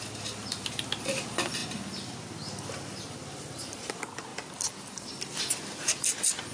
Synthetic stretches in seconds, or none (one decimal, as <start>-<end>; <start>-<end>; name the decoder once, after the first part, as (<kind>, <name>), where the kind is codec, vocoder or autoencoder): none